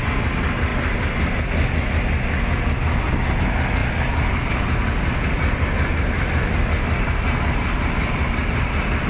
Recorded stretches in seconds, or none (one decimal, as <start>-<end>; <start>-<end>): 0.0-9.1